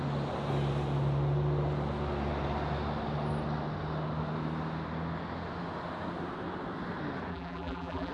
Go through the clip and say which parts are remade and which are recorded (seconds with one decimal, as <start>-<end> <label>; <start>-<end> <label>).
0.0-7.3 recorded; 7.3-8.1 remade